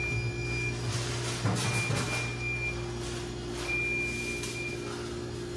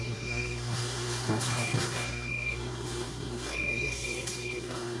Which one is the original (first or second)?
first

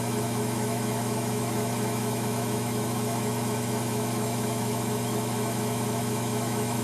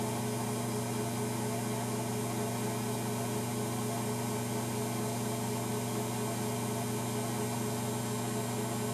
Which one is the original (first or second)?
second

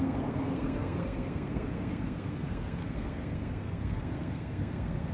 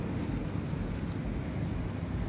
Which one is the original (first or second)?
second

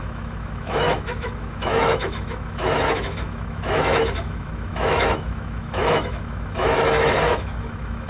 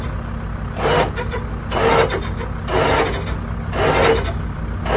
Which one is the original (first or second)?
second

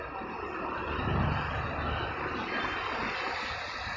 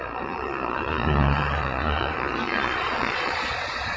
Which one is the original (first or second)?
first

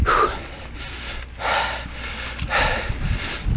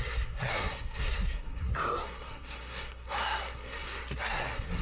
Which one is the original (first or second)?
first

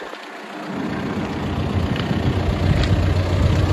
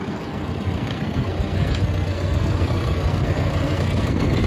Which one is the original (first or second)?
first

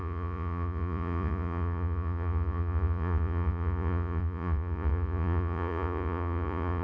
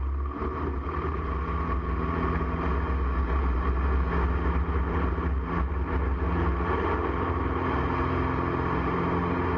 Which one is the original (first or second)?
second